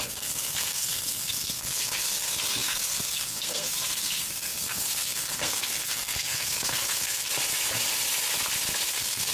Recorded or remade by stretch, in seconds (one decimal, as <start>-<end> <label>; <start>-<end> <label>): 0.0-7.3 remade; 7.3-8.9 recorded; 8.9-9.3 remade